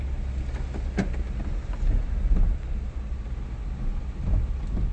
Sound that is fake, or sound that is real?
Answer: real